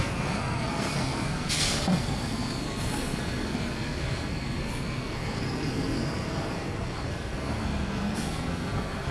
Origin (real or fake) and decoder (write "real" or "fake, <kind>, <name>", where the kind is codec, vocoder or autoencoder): fake, codec, SNAC